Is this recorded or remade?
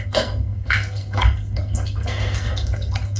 remade